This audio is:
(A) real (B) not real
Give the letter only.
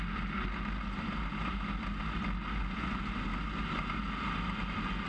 A